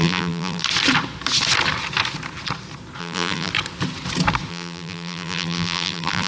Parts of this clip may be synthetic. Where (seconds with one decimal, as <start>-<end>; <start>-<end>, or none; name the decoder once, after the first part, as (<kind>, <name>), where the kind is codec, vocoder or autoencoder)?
0.0-0.6 (vocoder, BigVGAN v2); 3.0-3.5; 4.5-6.3